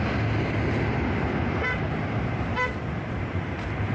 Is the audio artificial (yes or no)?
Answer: no